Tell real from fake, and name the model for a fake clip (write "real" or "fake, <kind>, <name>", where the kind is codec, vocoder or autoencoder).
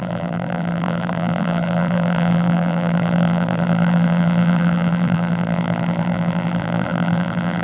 fake, vocoder, BigVGAN v2